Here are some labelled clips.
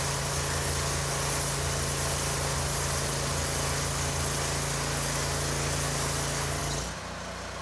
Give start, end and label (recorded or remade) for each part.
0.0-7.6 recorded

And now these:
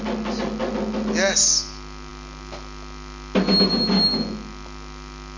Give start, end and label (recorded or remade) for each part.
0.0-5.4 recorded

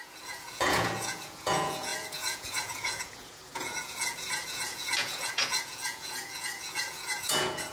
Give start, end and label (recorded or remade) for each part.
0.0-7.7 remade